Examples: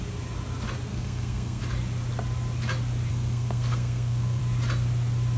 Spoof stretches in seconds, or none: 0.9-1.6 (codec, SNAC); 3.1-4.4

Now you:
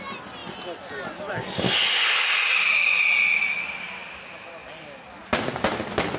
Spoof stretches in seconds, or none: none